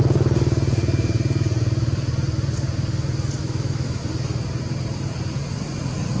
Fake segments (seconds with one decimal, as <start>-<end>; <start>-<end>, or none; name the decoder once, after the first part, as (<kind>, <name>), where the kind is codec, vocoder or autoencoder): 3.4-4.0 (autoencoder, DAC-VAE)